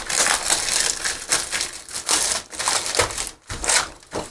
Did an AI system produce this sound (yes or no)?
no